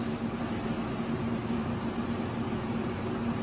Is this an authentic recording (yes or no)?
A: yes